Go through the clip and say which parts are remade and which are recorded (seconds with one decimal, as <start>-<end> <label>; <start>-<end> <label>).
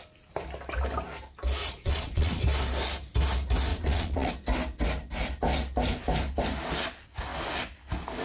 0.0-1.6 recorded; 1.6-2.4 remade; 2.4-3.7 recorded; 3.7-4.3 remade; 4.3-8.2 recorded